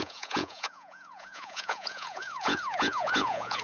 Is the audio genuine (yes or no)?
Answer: no